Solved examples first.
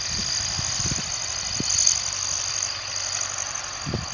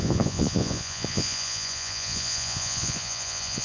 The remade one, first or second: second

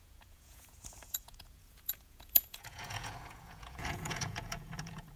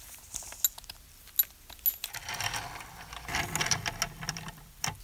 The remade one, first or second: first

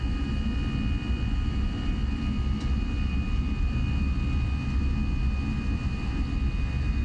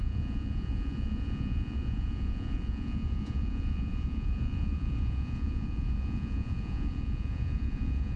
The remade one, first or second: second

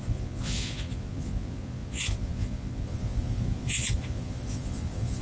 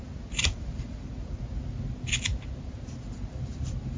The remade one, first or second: first